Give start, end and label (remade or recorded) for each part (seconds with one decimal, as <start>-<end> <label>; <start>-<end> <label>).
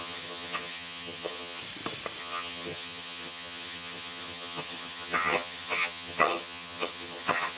0.0-1.6 remade; 1.6-2.2 recorded; 2.2-7.6 remade